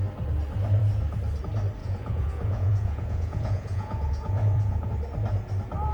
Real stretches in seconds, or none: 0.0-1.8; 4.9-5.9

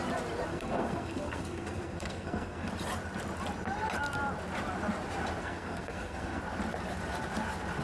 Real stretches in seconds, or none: 0.0-0.5; 2.7-5.4; 6.4-7.8

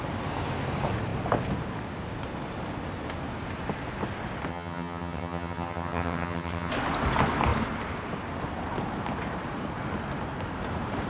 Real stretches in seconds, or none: 0.0-4.5; 6.7-11.1

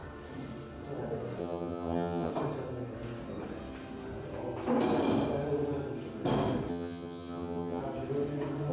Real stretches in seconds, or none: 0.0-1.4; 2.3-6.7; 7.8-8.7